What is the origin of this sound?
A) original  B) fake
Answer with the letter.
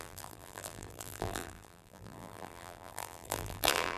B